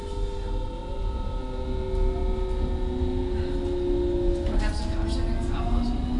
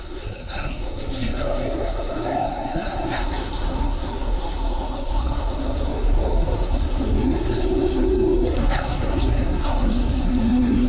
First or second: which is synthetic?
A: second